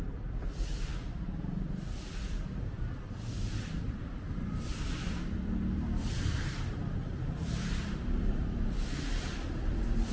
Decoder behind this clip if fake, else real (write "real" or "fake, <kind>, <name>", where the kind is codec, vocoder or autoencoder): fake, vocoder, BigVGAN v2